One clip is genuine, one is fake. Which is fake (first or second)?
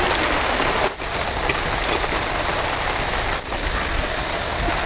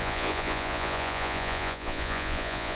second